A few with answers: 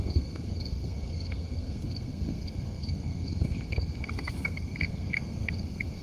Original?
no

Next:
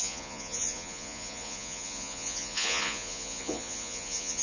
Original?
no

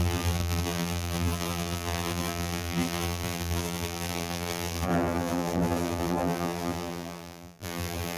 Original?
no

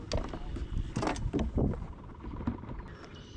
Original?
yes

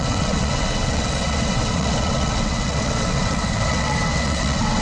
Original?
no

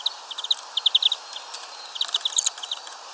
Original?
yes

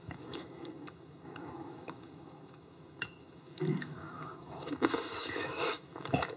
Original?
no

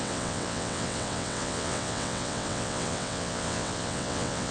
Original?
no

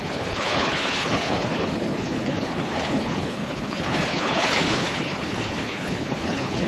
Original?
no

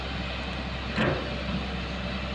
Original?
yes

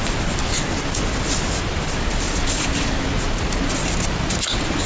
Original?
yes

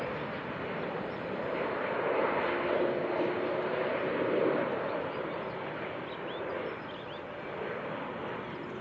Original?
yes